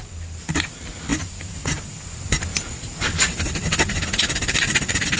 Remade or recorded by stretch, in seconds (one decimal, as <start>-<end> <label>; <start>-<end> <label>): 0.0-5.2 recorded

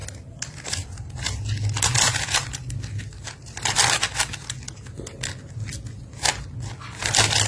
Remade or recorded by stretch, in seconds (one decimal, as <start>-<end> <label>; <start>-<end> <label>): 0.0-7.5 recorded

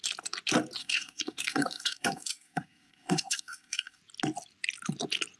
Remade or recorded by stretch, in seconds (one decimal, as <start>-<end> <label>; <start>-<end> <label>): 0.0-0.8 recorded; 0.8-4.0 remade; 4.0-5.4 recorded

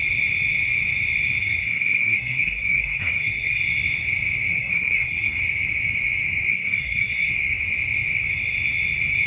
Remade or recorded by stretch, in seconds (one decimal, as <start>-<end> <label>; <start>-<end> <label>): 0.0-1.4 recorded; 1.4-3.6 remade; 3.6-4.5 recorded; 4.5-5.4 remade; 5.4-6.5 recorded; 6.5-7.3 remade; 7.3-9.3 recorded

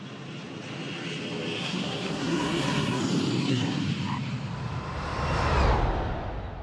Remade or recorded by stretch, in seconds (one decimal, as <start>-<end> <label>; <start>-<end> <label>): 0.0-1.6 recorded; 1.6-3.0 remade; 3.0-3.4 recorded; 3.4-3.9 remade; 3.9-6.6 recorded

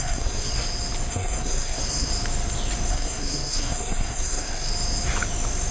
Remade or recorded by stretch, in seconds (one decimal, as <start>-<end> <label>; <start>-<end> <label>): 0.0-0.5 remade; 0.5-1.1 recorded; 1.1-2.1 remade; 2.1-2.9 recorded; 2.9-4.7 remade; 4.7-5.7 recorded